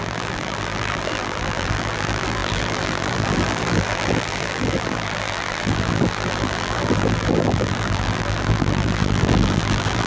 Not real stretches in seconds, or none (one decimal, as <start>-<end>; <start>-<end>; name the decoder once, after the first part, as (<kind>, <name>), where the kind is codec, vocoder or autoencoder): 0.0-10.1 (vocoder, BigVGAN v2)